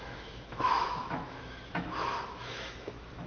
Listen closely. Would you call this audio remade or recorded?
remade